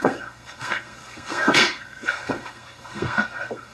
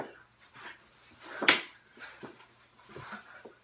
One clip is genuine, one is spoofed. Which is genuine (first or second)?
second